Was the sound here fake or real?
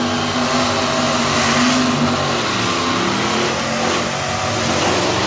real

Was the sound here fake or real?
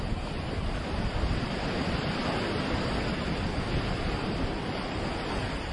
fake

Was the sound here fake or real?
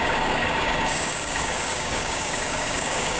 fake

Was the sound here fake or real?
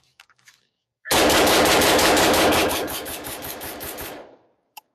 fake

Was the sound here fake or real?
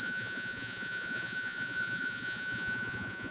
fake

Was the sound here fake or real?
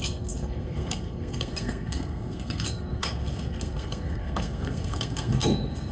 fake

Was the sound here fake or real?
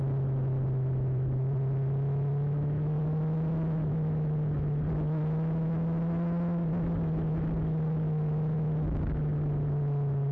real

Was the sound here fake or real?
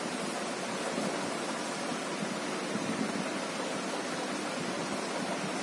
real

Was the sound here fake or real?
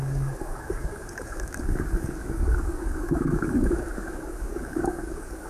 fake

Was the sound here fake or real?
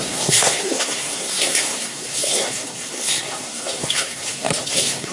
fake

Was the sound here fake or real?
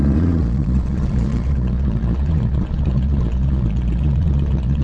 fake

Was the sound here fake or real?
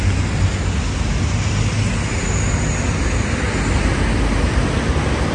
real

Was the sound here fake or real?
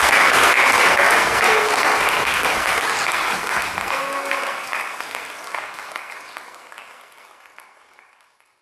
fake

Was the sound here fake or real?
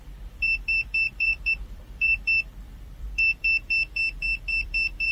fake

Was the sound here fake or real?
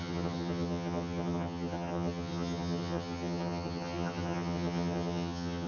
fake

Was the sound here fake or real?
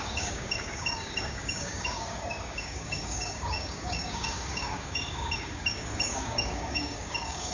fake